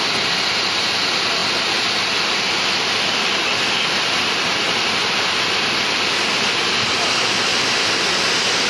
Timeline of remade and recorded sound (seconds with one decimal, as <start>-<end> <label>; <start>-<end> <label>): 0.0-8.7 recorded